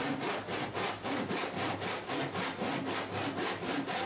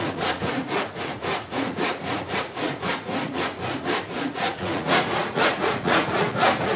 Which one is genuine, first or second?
first